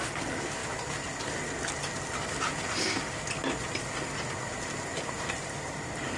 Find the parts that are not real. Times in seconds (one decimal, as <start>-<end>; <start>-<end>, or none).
4.9-6.2